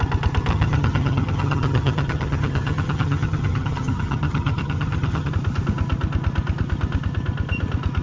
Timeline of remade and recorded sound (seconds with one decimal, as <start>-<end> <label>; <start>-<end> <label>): 0.0-0.5 recorded; 0.5-5.3 remade; 5.3-8.0 recorded